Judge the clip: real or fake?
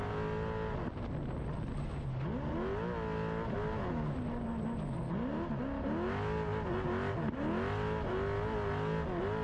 real